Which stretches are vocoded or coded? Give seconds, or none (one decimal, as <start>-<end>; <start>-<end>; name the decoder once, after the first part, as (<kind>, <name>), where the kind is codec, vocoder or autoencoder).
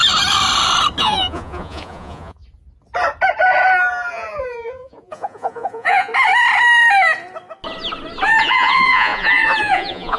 1.0-2.4 (vocoder, Vocos); 4.1-6.1; 8.4-10.2